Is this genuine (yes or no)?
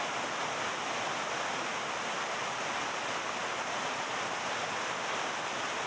yes